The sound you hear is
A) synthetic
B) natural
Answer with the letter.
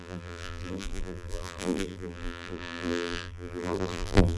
A